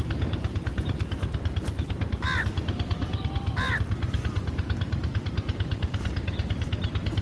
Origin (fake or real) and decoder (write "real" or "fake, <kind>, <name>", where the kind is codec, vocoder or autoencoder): real